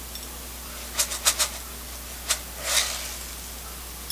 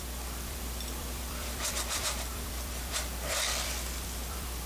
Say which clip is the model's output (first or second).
second